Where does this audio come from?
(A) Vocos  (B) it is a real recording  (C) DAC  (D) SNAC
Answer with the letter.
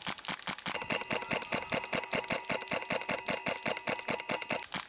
B